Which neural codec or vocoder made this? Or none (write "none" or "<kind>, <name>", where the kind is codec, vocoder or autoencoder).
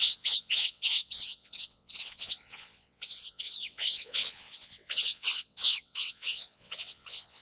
vocoder, WaveNeXt